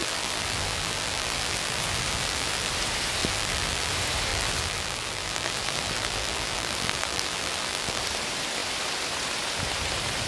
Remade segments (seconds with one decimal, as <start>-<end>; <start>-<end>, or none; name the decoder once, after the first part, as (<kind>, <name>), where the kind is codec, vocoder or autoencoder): 0.0-2.7 (vocoder, BigVGAN v2); 3.2-3.9; 4.3-8.0